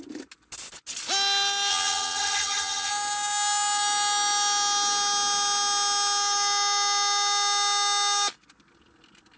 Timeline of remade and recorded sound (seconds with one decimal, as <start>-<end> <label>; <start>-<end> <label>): 0.0-1.7 recorded; 1.7-2.9 remade; 2.9-9.4 recorded